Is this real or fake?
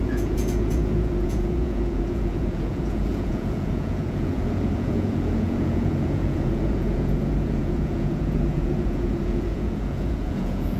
fake